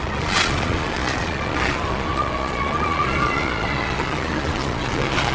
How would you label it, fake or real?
fake